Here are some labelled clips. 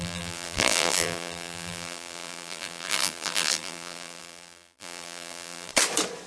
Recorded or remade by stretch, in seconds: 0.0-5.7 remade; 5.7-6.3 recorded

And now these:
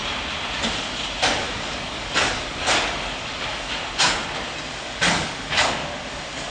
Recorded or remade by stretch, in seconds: 0.0-1.4 recorded; 1.4-3.8 remade; 3.8-4.7 recorded; 4.7-6.5 remade

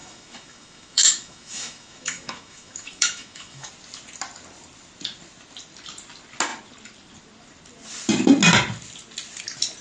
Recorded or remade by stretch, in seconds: 0.0-3.7 remade; 3.7-9.8 recorded

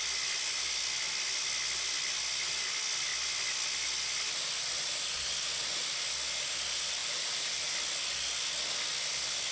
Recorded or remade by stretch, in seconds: 0.0-7.0 recorded; 7.0-7.7 remade; 7.7-9.5 recorded

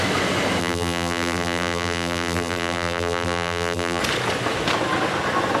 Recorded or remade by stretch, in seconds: 0.0-0.6 recorded; 0.6-4.0 remade; 4.0-5.6 recorded